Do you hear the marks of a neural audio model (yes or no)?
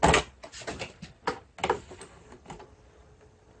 no